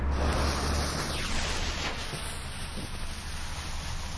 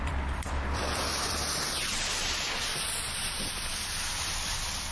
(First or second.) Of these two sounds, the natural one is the first